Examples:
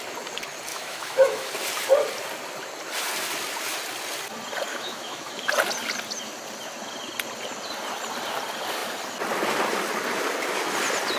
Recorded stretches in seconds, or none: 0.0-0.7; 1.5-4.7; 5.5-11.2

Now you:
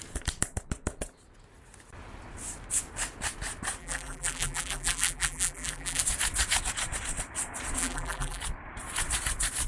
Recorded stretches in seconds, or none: 0.0-3.8; 6.0-7.8; 8.4-9.7

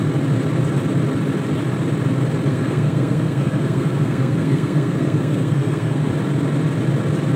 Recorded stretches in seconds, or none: 0.0-2.5; 6.1-7.4

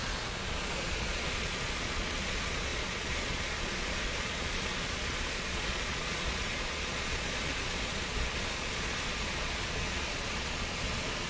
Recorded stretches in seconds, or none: none

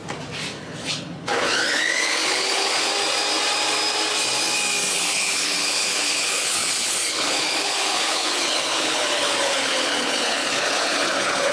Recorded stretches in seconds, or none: 0.0-0.6; 2.9-4.9

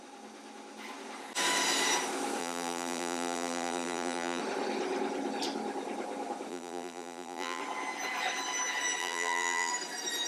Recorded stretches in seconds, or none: 0.0-2.4; 4.4-6.5; 7.6-9.0; 9.7-10.3

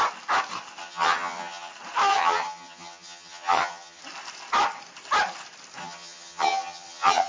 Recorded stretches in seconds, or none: 0.0-0.8; 1.7-2.1; 4.0-5.8